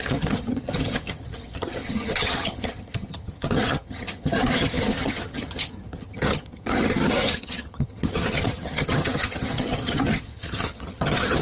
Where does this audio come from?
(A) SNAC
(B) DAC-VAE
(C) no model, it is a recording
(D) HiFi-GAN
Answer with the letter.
D